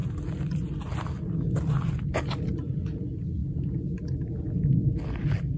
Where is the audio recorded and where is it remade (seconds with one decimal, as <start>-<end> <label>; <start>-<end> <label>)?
0.0-5.6 recorded